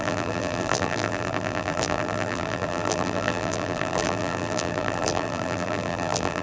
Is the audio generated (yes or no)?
yes